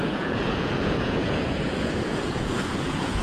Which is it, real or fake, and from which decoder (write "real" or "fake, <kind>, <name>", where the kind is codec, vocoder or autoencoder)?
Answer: fake, vocoder, Vocos